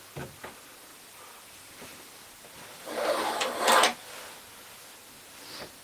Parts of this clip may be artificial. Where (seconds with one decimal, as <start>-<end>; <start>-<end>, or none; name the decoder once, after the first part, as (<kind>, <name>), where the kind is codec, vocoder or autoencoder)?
0.9-3.6 (vocoder, BigVGAN v2)